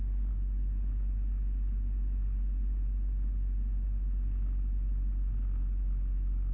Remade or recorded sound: recorded